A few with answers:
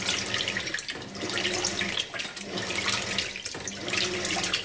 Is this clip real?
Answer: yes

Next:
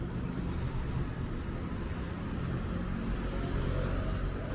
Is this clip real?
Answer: yes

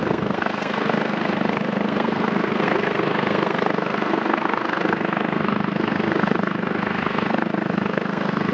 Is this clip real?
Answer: no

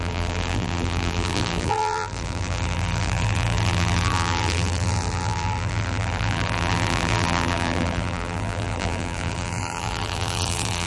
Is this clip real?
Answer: no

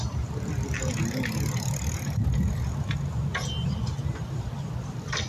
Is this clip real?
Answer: yes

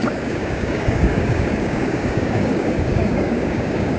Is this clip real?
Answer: no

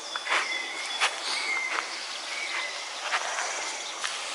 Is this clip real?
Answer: yes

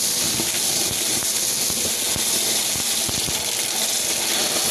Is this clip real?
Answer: yes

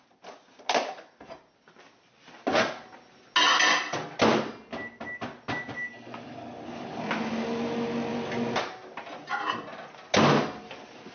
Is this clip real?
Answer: yes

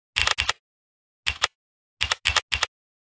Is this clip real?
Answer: yes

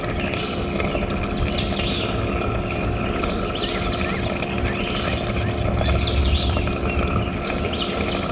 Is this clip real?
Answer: yes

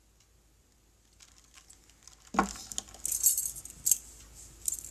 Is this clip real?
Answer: yes